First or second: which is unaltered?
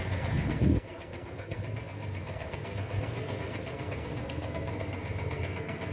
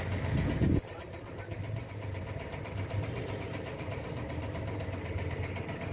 second